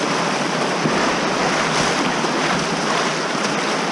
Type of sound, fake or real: real